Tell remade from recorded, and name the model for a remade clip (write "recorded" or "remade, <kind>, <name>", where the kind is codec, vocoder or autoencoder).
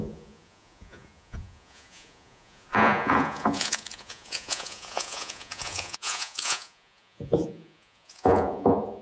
remade, vocoder, Vocos